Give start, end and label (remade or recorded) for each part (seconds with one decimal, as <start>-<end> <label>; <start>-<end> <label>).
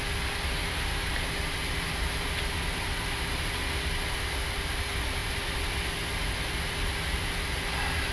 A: 0.0-8.1 recorded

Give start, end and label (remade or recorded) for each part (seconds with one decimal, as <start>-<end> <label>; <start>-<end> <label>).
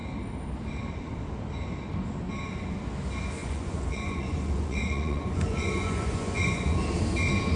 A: 0.0-3.4 recorded; 3.4-6.8 remade; 6.8-7.6 recorded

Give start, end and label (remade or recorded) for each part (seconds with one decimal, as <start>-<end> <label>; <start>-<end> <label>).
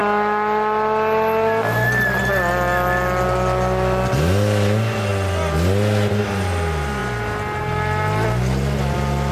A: 0.0-9.3 recorded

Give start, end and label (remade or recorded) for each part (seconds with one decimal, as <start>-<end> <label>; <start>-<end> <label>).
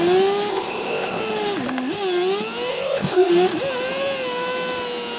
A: 0.0-0.5 recorded; 0.5-1.2 remade; 1.2-2.7 recorded; 2.7-3.3 remade; 3.3-5.2 recorded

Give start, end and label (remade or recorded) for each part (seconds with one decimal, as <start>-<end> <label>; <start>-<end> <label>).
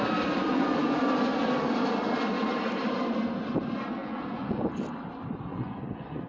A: 0.0-0.5 recorded; 0.5-1.0 remade; 1.0-4.0 recorded; 4.0-4.6 remade; 4.6-5.5 recorded; 5.5-6.3 remade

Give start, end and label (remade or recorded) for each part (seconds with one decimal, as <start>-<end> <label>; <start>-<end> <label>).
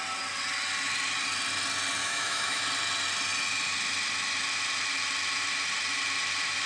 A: 0.0-2.0 recorded; 2.0-2.6 remade; 2.6-6.7 recorded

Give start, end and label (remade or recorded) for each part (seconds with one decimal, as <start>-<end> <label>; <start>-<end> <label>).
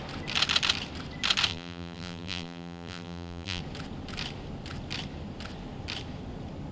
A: 0.0-1.5 recorded; 1.5-3.6 remade; 3.6-6.7 recorded